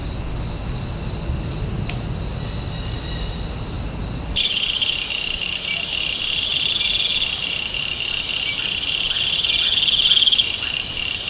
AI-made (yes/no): no